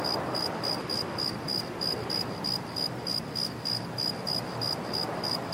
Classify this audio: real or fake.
real